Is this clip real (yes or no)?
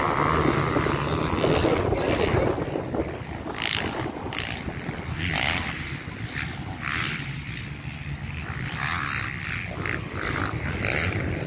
yes